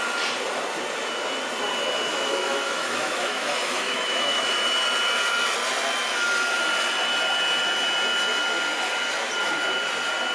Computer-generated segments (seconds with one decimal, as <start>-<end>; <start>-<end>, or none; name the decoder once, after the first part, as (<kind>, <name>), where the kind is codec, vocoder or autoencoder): 2.1-4.5 (autoencoder, DAC-VAE)